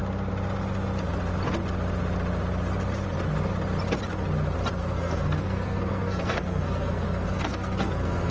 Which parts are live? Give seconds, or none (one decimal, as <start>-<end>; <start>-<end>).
0.0-4.8